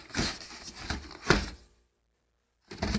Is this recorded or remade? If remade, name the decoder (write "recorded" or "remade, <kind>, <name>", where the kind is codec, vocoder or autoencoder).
recorded